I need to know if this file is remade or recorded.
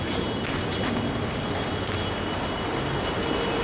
recorded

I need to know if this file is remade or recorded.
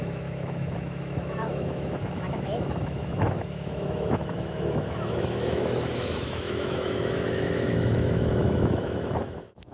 remade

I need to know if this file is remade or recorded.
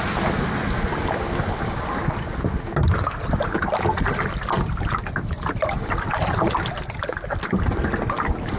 recorded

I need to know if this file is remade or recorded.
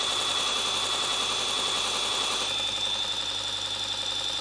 recorded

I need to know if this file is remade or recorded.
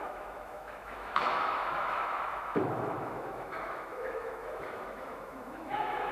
remade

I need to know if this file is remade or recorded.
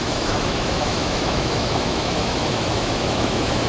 remade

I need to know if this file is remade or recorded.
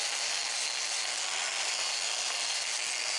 recorded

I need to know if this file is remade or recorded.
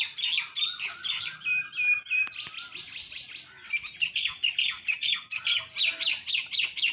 recorded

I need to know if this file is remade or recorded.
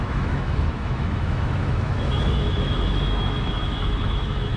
remade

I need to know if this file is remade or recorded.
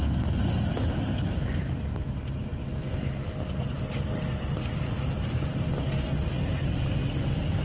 recorded